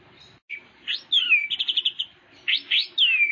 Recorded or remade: recorded